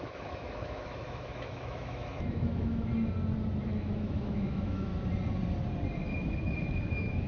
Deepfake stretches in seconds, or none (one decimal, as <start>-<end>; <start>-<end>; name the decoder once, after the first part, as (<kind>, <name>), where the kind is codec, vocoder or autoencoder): 0.0-2.9 (autoencoder, DAC-VAE); 3.6-4.9; 6.4-7.3